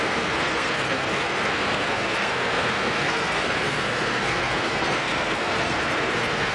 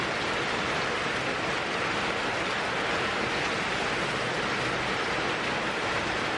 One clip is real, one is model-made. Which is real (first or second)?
second